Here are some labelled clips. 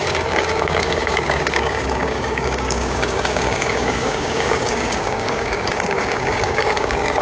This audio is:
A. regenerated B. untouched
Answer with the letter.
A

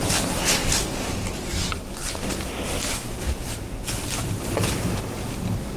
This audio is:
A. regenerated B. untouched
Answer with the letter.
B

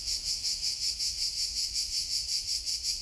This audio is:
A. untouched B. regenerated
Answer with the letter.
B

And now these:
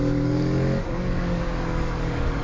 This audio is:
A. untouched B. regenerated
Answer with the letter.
B